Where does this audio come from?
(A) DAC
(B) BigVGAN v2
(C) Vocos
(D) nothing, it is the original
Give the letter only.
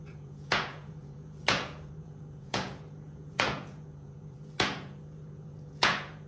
C